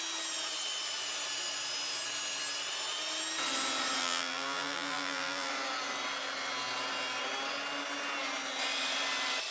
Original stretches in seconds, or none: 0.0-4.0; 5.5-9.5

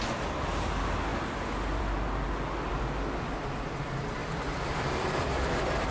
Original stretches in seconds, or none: 0.0-1.1; 1.8-2.7; 3.8-4.2

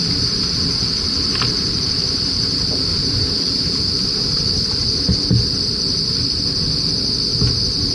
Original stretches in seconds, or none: 0.0-2.9; 3.9-7.9